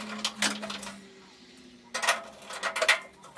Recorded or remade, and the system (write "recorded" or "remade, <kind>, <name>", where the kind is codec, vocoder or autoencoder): recorded